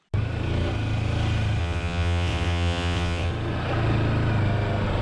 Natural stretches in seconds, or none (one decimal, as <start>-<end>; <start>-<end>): 0.0-1.6; 3.3-5.0

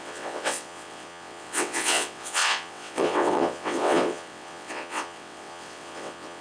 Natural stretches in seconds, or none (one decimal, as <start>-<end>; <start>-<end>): none

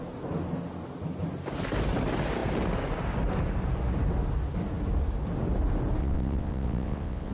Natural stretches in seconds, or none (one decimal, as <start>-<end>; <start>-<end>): 0.0-6.0

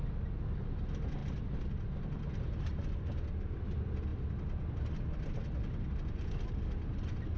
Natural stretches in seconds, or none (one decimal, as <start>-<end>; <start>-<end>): 0.0-7.4

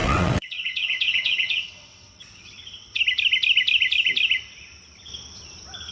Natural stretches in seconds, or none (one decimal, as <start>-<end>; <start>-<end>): 3.0-5.9

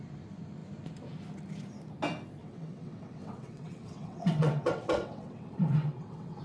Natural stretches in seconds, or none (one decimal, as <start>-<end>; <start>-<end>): 0.0-2.4

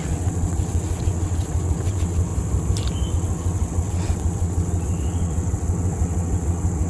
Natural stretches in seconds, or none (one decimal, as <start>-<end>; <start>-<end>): 2.3-3.1